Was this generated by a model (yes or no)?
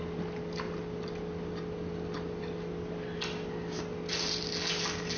no